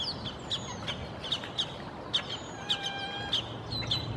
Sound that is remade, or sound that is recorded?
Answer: recorded